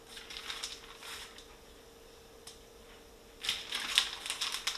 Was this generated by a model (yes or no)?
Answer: no